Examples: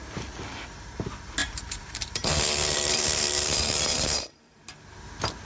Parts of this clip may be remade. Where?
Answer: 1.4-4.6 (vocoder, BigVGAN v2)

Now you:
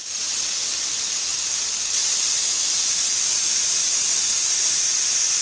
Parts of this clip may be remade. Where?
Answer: 0.0-5.4 (vocoder, BigVGAN v2)

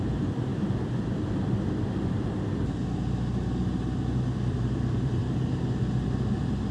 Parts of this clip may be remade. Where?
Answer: 0.0-0.5 (vocoder, BigVGAN v2); 4.5-5.2

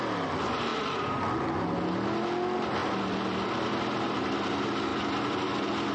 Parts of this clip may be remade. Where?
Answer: 0.7-1.2 (vocoder, BigVGAN v2); 2.8-4.5; 4.9-5.9